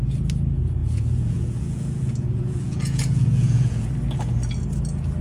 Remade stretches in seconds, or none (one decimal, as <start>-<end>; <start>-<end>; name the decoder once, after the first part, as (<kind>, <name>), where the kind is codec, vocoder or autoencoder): 0.8-3.9 (vocoder, Vocos)